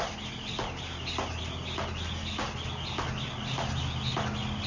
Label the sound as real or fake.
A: real